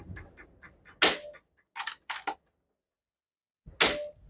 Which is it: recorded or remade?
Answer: recorded